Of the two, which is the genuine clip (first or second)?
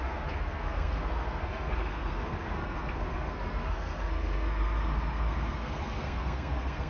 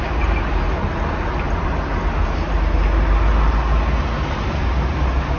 second